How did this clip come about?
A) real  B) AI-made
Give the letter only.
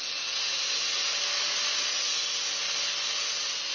A